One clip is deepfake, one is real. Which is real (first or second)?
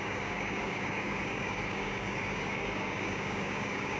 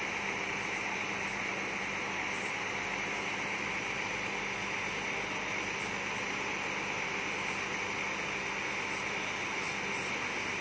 second